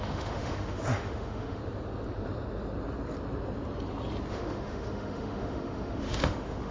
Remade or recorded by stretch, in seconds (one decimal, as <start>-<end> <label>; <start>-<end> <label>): 0.0-1.6 remade; 1.6-4.3 recorded; 4.3-6.7 remade